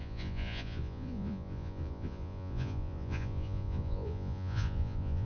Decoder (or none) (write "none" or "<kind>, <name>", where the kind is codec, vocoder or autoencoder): vocoder, Vocos